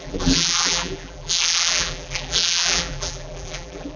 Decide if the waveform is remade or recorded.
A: remade